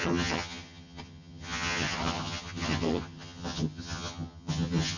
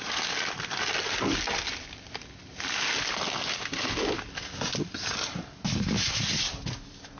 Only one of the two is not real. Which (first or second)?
first